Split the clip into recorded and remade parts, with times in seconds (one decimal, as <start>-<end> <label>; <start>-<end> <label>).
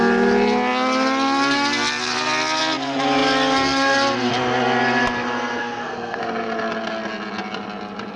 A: 0.0-5.6 recorded; 5.6-6.2 remade; 6.2-8.2 recorded